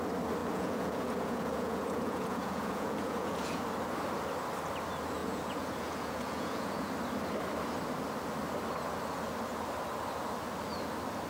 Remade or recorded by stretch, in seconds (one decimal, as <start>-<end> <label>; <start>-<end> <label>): 0.0-0.4 recorded; 0.4-3.6 remade; 3.6-5.2 recorded; 5.2-6.9 remade; 6.9-11.3 recorded